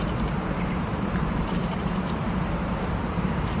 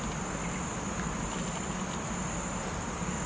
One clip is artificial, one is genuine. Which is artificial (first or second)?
first